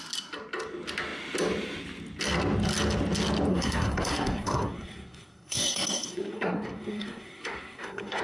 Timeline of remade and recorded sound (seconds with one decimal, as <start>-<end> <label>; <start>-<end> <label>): 0.0-3.5 recorded; 3.5-8.2 remade